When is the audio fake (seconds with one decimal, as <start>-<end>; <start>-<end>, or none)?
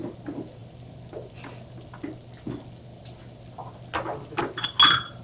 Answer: none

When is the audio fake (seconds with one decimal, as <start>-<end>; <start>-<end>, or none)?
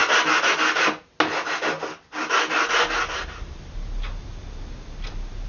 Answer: none